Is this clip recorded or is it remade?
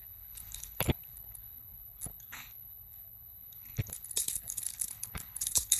remade